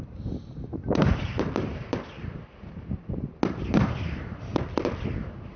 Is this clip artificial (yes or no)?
no